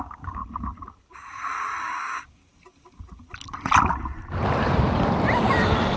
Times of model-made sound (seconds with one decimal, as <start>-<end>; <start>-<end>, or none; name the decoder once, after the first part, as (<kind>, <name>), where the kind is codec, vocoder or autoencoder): 0.0-0.4 (codec, DAC); 1.8-2.4